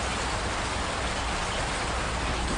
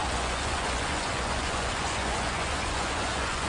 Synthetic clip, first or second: second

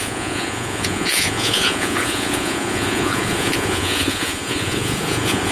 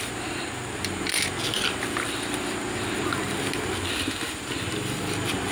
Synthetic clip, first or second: first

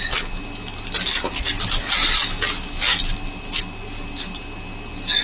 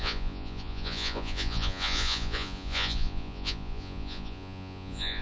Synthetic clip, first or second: second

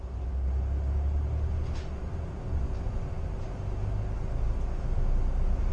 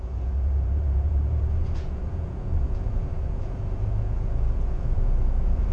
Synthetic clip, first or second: second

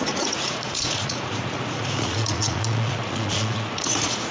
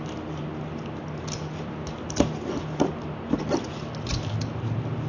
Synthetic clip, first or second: first